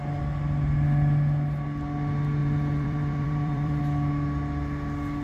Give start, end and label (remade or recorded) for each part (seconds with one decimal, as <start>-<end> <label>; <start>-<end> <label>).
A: 0.0-2.4 recorded; 2.4-3.8 remade; 3.8-5.2 recorded